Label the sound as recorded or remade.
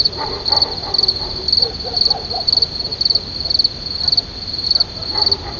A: recorded